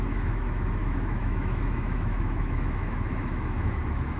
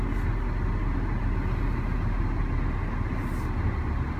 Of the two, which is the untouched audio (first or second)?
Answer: second